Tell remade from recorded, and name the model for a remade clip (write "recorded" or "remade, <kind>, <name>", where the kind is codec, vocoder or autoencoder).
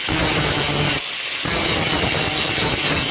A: recorded